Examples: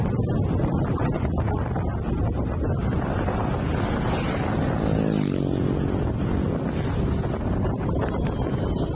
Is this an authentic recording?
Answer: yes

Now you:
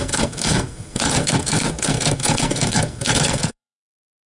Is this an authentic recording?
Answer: no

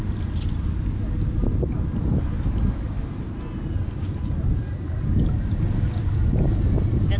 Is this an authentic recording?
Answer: yes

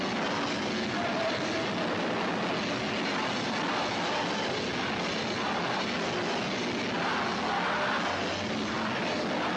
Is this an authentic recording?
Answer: yes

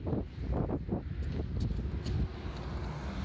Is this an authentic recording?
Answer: yes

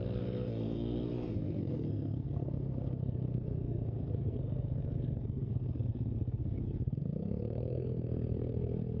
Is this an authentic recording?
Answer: no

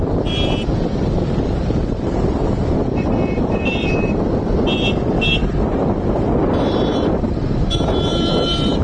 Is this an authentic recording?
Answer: no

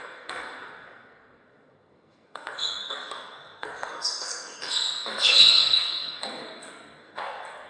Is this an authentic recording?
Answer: no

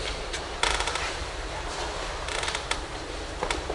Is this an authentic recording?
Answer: no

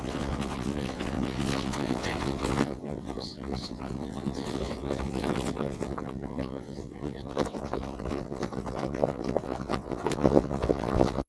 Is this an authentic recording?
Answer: no